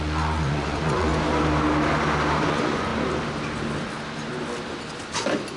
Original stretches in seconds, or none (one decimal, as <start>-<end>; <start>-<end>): 1.1-2.4; 2.9-5.6